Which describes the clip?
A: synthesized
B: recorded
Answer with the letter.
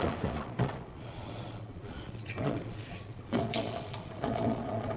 A